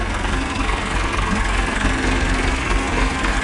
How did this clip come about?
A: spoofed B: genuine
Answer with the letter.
A